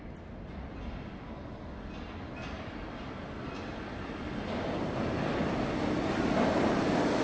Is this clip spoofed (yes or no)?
no